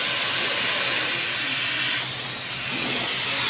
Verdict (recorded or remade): recorded